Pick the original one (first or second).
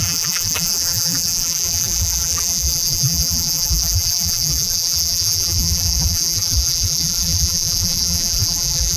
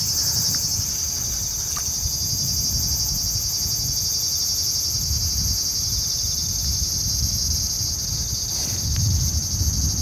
second